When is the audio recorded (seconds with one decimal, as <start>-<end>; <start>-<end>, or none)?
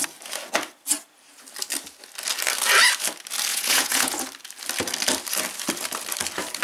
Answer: 0.0-3.5; 4.2-6.6